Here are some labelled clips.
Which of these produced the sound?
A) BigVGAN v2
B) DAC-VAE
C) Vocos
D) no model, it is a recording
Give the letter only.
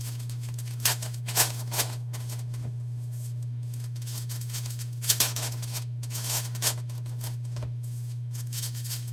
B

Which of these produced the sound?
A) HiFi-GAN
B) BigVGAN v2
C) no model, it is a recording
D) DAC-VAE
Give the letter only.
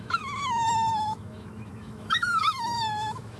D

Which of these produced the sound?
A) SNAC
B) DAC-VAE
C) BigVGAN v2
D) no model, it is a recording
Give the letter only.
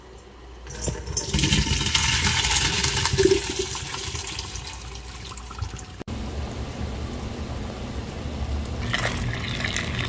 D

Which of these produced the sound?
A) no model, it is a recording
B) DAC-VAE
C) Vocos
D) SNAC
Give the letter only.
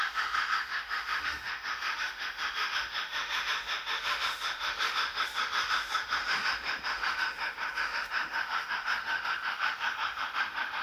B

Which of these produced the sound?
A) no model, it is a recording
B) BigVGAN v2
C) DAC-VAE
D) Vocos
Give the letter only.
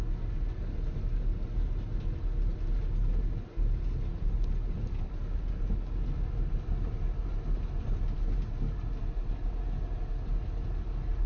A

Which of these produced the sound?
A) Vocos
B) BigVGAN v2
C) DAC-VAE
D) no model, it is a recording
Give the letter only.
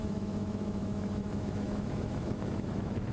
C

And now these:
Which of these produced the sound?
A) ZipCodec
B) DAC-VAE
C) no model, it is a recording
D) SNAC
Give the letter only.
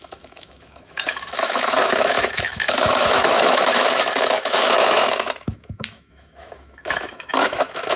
B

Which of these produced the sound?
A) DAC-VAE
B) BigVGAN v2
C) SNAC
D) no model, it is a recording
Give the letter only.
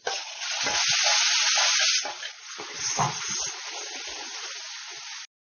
D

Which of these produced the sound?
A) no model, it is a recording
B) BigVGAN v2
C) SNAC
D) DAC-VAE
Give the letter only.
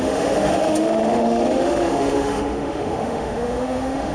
D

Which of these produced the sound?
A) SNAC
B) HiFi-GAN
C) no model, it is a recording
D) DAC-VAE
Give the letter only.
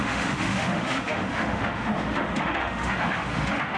D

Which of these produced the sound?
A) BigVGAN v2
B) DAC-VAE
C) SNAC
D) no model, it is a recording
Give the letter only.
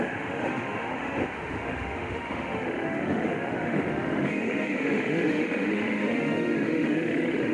B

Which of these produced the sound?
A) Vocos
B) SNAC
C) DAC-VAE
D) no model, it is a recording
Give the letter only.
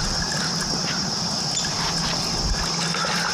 D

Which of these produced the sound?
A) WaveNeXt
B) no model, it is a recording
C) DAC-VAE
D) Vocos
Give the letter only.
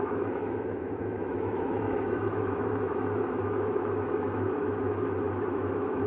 C